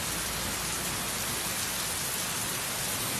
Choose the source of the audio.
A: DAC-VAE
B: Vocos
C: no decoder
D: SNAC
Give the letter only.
C